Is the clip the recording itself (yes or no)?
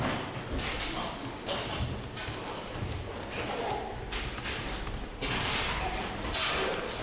yes